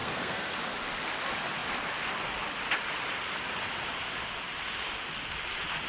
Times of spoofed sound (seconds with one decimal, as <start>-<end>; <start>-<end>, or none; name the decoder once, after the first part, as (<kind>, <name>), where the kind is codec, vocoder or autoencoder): 0.0-0.6 (codec, SNAC)